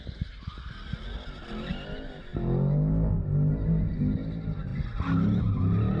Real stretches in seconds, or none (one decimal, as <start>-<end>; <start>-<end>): 0.0-6.0